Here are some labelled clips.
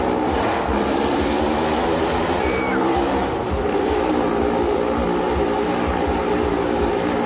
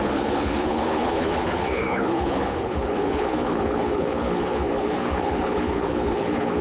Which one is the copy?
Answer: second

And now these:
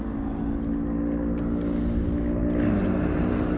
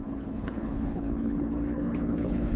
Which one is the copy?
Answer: second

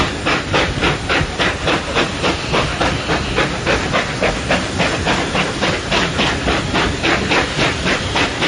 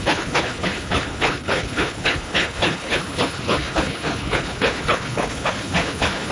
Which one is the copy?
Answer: second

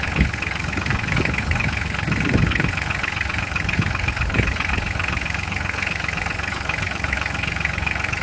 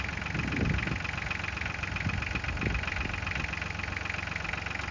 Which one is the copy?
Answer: first